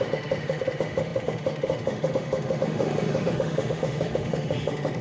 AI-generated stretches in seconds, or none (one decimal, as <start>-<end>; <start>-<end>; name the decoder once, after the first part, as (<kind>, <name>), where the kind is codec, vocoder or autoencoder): 0.0-5.0 (autoencoder, DAC-VAE)

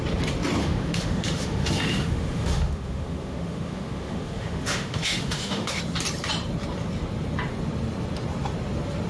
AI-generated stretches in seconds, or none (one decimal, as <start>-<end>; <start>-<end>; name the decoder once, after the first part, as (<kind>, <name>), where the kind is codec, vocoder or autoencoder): 0.6-5.8 (autoencoder, DAC-VAE)

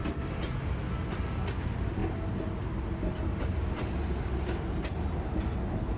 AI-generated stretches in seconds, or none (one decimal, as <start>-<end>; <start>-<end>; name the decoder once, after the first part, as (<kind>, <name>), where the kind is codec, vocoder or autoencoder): none

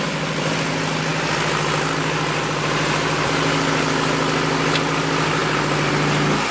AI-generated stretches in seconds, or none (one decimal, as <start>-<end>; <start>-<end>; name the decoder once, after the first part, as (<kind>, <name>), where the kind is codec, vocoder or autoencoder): none

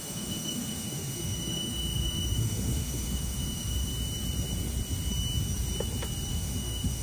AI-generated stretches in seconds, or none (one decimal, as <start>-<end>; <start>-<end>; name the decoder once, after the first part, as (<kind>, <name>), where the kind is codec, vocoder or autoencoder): 0.0-3.9 (autoencoder, DAC-VAE); 6.3-7.0